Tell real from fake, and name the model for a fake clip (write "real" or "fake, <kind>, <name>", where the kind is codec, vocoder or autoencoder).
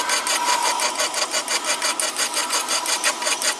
real